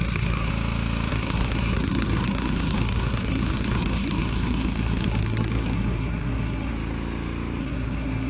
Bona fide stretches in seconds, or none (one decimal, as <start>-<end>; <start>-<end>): 0.5-1.1; 6.7-7.6

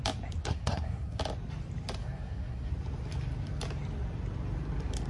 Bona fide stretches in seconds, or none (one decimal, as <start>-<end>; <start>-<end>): 0.0-0.4; 1.2-2.0; 2.7-5.1

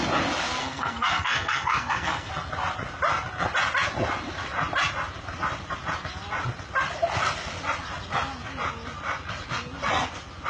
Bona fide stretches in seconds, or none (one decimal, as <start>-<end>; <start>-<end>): 0.0-0.6; 2.3-10.5

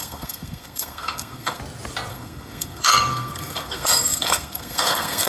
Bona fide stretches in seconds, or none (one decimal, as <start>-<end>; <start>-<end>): 1.6-2.1